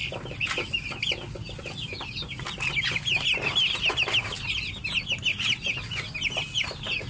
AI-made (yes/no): no